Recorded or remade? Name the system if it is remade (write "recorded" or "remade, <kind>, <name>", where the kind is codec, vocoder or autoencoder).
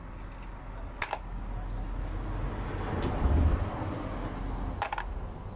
recorded